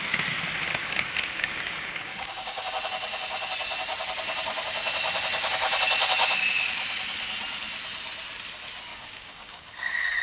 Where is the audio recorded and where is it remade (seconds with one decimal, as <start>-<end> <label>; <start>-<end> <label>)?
0.0-0.8 recorded; 0.8-2.7 remade; 2.7-8.9 recorded; 8.9-10.2 remade